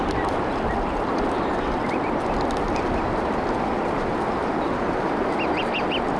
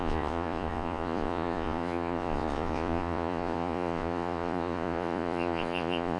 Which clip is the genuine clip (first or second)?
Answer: first